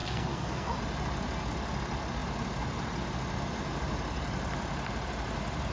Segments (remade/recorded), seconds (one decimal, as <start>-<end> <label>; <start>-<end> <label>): 0.0-0.8 remade; 0.8-5.7 recorded